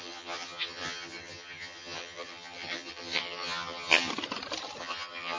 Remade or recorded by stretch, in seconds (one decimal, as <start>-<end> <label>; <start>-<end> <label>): 0.0-4.1 remade; 4.1-4.8 recorded; 4.8-5.4 remade